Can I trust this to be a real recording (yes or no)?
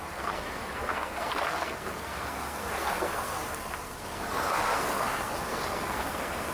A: no